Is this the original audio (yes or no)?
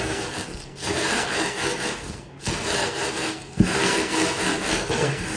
no